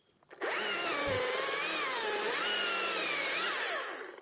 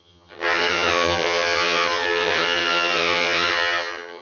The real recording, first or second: first